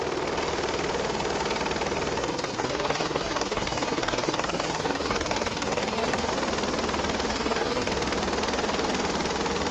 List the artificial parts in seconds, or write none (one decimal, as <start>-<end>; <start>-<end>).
2.2-6.3; 7.3-7.9